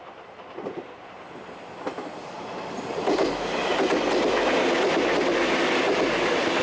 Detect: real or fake real